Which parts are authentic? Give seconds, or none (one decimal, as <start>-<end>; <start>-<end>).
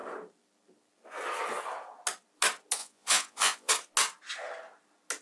0.0-2.8; 3.7-5.2